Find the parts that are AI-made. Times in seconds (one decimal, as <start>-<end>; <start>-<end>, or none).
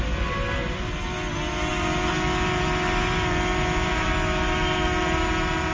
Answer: none